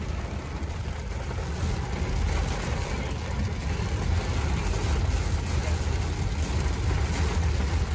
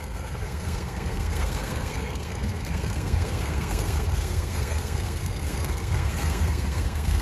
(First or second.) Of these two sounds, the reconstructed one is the second